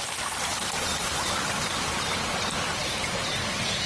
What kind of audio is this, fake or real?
real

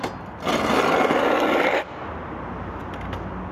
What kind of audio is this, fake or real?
real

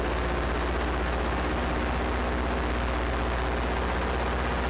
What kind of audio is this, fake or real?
real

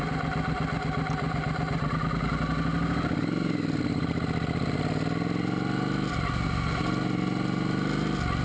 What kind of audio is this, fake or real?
real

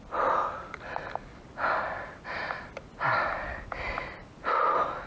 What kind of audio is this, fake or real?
real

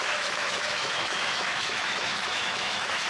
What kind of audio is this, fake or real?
fake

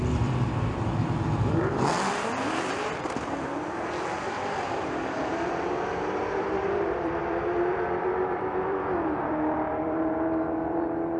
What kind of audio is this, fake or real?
fake